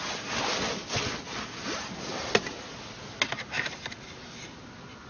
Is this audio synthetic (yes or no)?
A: no